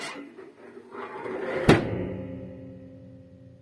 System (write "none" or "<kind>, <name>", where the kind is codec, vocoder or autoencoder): none